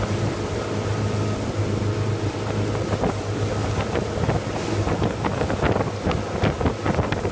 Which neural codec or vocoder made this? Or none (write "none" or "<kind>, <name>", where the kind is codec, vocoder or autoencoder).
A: none